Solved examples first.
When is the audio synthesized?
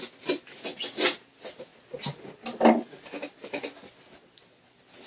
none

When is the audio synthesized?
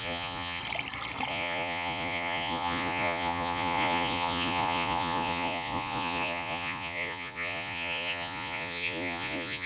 0.0-0.6 (vocoder, Vocos); 1.3-9.7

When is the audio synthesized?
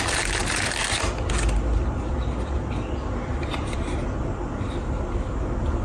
none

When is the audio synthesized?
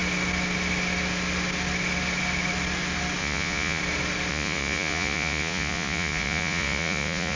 3.2-3.8 (vocoder, Vocos); 4.3-7.4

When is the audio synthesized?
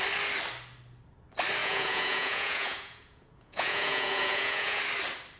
1.6-4.8 (vocoder, Vocos)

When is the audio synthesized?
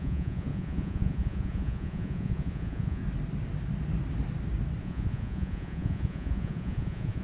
0.0-3.0 (vocoder, Vocos); 4.8-7.2